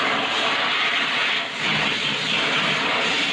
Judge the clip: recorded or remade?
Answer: recorded